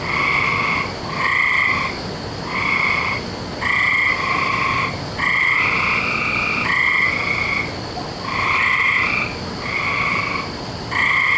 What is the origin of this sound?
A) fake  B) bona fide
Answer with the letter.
B